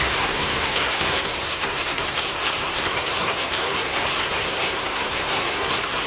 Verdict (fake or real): fake